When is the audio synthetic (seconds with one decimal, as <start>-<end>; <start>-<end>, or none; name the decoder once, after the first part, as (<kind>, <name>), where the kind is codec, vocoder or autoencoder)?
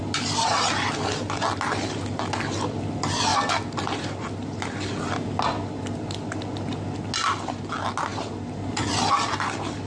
none